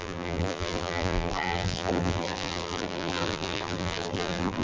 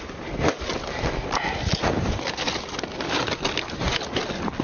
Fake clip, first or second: first